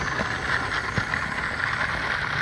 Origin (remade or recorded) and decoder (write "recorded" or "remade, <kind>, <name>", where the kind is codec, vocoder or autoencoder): recorded